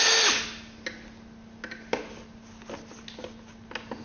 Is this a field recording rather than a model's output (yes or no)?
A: yes